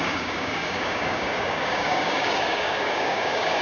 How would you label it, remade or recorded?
remade